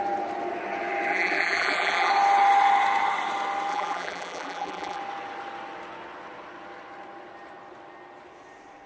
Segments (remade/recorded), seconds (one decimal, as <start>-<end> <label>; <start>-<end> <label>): 0.0-1.1 recorded; 1.1-2.1 remade; 2.1-3.7 recorded; 3.7-5.0 remade; 5.0-8.9 recorded